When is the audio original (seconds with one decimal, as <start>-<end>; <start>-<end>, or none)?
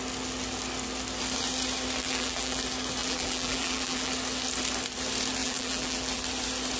0.0-2.0; 2.6-3.0; 4.1-5.4; 6.2-6.8